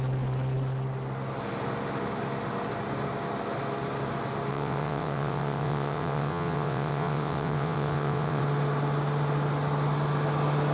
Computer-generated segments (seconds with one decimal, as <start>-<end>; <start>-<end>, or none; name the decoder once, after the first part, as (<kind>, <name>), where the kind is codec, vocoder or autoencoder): 4.5-8.4 (vocoder, WaveNeXt)